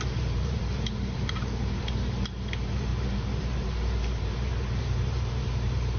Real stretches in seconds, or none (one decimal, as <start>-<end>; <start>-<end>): none